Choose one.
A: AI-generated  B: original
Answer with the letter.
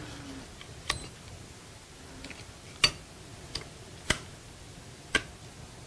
B